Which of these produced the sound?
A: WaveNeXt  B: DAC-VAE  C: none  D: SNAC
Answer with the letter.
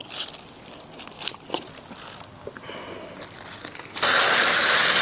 C